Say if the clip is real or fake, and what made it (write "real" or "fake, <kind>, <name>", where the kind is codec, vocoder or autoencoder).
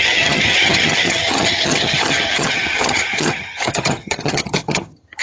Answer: fake, vocoder, HiFi-GAN